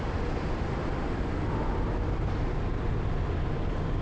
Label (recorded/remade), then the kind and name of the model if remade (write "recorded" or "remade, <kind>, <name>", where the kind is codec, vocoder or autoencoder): recorded